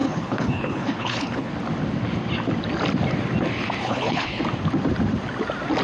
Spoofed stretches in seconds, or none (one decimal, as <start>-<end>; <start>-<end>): 0.0-1.5; 3.8-4.4